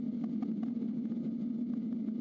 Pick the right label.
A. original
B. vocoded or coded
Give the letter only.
A